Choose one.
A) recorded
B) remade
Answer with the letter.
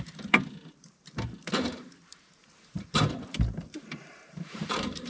B